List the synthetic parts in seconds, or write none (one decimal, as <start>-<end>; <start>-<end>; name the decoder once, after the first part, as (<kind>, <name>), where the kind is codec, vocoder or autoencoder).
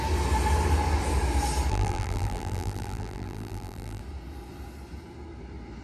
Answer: 1.7-4.0 (vocoder, BigVGAN v2)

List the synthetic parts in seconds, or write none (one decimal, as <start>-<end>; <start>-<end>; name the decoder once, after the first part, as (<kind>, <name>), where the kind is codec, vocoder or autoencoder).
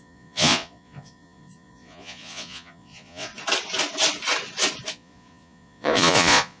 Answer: 0.0-3.3 (vocoder, Vocos); 4.9-6.6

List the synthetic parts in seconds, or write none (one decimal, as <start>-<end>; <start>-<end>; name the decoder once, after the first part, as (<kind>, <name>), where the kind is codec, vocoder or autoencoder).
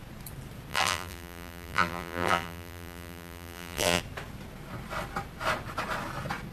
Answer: 0.7-4.0 (vocoder, BigVGAN v2)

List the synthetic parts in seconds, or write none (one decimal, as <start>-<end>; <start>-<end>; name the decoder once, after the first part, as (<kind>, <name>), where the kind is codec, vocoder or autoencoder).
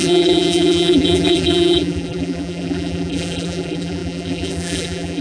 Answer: 0.0-5.2 (vocoder, BigVGAN v2)